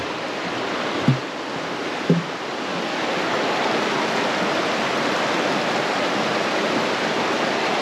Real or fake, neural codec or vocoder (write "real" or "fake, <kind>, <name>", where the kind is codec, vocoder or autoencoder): real